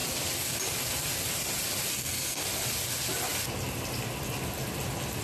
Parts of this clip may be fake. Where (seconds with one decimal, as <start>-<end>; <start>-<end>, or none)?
1.9-2.4